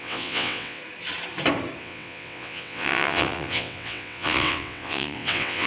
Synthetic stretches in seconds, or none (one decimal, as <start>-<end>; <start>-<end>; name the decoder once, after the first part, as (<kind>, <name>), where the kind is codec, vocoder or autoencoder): 0.0-0.8 (vocoder, WaveNeXt); 1.8-5.7